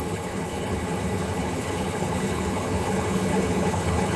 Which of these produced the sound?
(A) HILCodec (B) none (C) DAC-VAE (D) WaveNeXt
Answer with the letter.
A